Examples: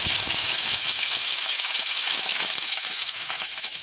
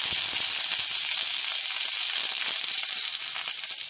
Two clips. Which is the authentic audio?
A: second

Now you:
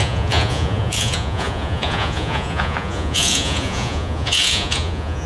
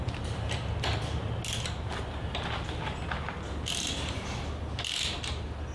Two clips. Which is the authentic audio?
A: second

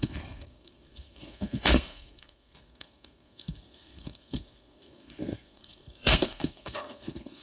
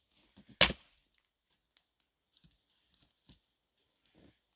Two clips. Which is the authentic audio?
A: second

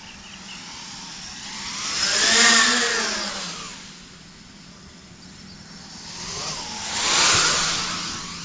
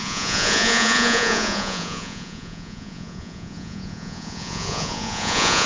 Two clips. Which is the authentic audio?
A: first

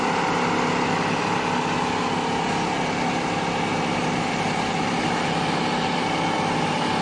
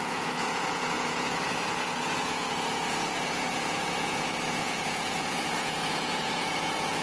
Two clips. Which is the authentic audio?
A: first